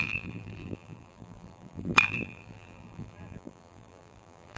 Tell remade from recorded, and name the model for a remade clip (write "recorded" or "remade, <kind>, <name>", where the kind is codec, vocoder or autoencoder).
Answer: remade, vocoder, BigVGAN v2